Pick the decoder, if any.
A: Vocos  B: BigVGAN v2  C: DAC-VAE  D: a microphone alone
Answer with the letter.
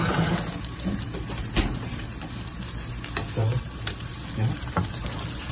B